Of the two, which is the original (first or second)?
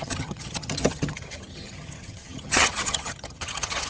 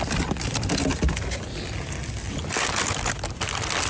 second